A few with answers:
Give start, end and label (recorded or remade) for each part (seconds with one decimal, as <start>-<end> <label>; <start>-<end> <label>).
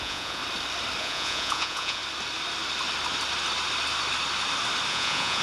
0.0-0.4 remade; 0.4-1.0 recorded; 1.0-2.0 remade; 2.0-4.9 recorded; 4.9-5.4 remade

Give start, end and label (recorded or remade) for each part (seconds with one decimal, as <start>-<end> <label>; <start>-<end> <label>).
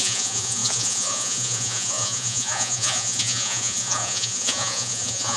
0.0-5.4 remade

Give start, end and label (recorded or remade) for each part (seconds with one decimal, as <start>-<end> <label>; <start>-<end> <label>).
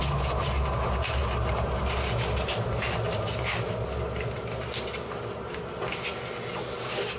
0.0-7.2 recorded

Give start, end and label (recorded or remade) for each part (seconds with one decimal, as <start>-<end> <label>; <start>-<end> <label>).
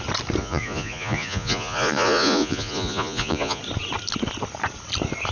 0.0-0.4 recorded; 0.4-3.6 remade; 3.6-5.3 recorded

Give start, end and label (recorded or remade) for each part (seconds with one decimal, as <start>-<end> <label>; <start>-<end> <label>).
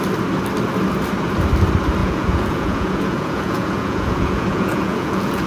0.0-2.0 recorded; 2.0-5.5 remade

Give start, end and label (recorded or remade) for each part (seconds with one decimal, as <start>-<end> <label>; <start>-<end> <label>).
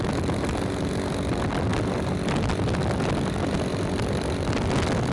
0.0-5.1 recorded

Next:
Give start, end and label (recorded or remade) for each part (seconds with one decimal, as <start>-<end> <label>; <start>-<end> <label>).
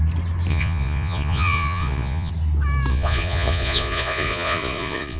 0.0-0.5 recorded; 0.5-2.3 remade; 2.3-2.9 recorded; 2.9-5.2 remade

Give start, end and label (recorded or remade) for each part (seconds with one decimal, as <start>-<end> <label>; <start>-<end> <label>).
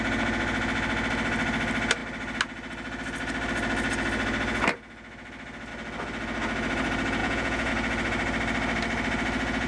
0.0-7.2 recorded; 7.2-7.7 remade; 7.7-9.7 recorded